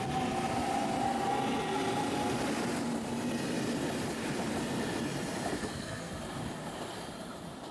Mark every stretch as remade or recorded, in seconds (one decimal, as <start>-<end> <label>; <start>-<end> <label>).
0.0-5.6 recorded; 5.6-6.1 remade; 6.1-7.7 recorded